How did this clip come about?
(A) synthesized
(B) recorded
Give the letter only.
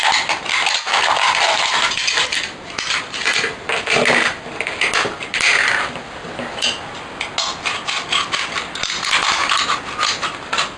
B